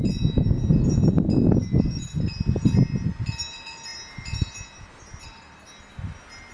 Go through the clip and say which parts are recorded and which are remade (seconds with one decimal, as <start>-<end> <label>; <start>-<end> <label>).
0.0-6.5 recorded